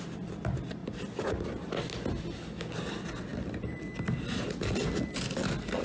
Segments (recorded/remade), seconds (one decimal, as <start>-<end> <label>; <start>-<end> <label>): 0.0-0.8 recorded; 0.8-1.6 remade; 1.6-3.3 recorded; 3.3-3.8 remade; 3.8-5.8 recorded